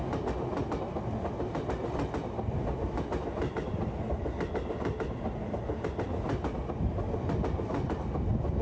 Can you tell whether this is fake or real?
real